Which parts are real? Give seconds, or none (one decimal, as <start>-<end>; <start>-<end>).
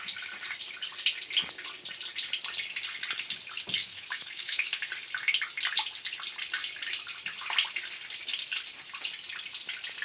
0.0-3.8; 4.9-10.0